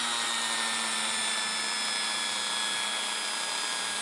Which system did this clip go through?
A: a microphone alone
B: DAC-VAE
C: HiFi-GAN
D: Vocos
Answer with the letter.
A